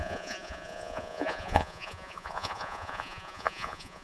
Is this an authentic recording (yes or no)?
no